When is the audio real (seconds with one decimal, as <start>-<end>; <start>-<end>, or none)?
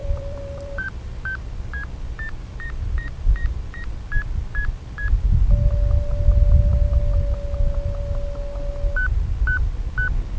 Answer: 1.1-2.5; 5.2-10.4